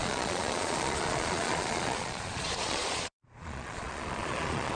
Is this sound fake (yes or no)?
yes